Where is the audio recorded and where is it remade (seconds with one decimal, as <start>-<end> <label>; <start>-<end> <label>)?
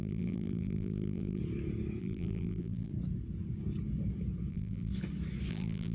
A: 0.0-1.4 remade; 1.4-2.0 recorded; 2.0-2.9 remade; 2.9-4.5 recorded; 4.5-4.9 remade; 4.9-5.5 recorded; 5.5-5.9 remade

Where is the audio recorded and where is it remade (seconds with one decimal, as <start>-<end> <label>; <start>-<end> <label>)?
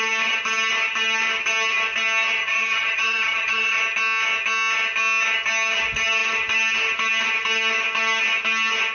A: 0.0-2.4 recorded; 2.4-3.8 remade; 3.8-8.9 recorded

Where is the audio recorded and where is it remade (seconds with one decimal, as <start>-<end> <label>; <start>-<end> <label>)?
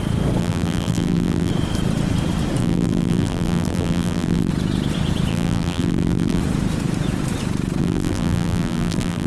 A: 0.0-0.4 recorded; 0.4-1.5 remade; 1.5-2.6 recorded; 2.6-4.5 remade; 4.5-5.3 recorded; 5.3-6.4 remade; 6.4-7.8 recorded; 7.8-9.3 remade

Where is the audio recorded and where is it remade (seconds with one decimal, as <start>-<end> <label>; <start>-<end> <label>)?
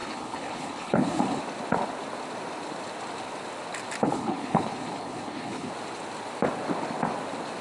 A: 0.0-1.4 remade; 1.4-4.0 recorded; 4.0-5.7 remade; 5.7-7.6 recorded